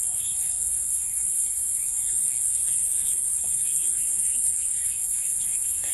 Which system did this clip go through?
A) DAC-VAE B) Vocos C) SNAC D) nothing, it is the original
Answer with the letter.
C